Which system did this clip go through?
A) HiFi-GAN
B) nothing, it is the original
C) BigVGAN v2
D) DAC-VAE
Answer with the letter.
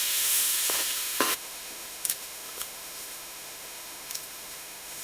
D